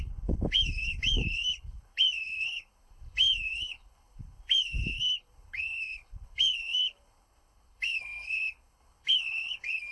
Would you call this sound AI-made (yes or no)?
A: yes